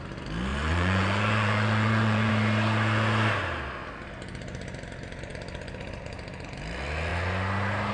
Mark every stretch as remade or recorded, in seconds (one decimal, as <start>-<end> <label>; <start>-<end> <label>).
0.0-0.5 recorded; 0.5-2.3 remade; 2.3-7.9 recorded